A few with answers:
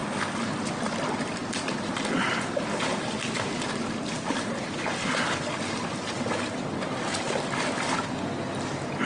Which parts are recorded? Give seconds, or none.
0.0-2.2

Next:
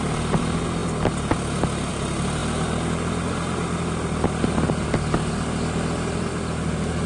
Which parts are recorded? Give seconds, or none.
0.0-7.1